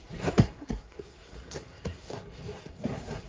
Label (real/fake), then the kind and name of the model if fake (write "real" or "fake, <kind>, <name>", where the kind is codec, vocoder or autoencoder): fake, codec, SNAC